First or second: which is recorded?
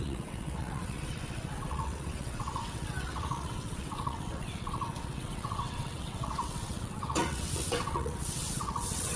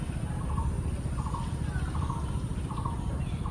second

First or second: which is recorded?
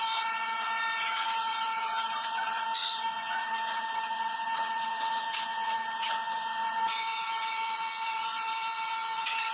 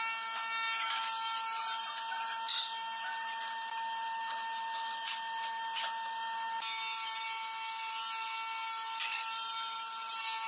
second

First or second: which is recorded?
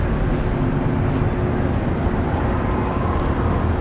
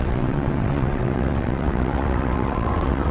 first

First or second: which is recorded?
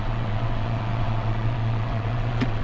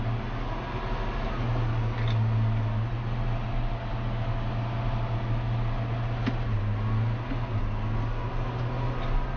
second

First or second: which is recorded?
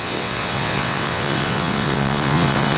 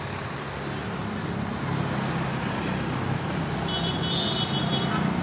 second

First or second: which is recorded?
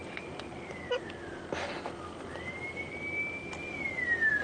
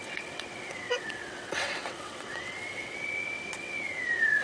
first